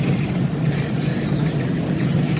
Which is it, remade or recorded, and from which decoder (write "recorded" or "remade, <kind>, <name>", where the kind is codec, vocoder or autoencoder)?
recorded